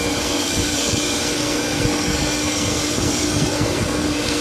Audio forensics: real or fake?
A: fake